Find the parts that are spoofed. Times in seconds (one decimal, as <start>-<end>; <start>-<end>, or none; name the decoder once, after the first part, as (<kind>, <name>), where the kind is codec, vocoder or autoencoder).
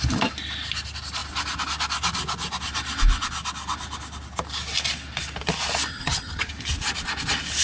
5.9-6.5 (vocoder, HiFi-GAN)